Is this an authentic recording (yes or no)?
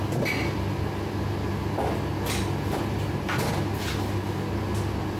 yes